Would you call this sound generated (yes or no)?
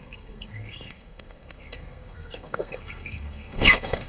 yes